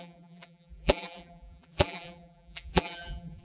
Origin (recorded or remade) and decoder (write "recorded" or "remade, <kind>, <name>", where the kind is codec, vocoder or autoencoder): remade, vocoder, BigVGAN v2